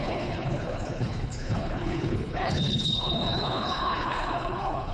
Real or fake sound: fake